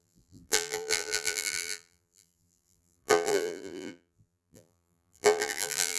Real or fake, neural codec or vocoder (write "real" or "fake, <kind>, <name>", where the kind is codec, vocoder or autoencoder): fake, vocoder, BigVGAN v2